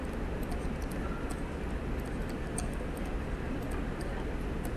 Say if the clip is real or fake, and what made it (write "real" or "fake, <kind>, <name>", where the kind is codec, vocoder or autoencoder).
real